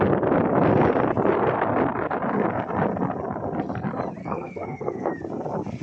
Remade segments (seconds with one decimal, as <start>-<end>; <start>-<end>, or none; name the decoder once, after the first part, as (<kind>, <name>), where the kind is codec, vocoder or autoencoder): 4.2-5.1 (codec, SNAC)